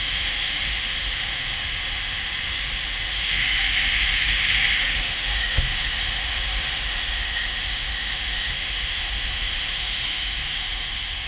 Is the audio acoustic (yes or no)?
no